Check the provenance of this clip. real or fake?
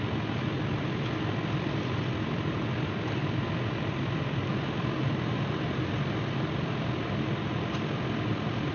fake